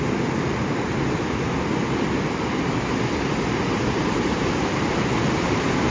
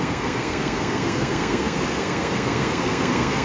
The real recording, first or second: first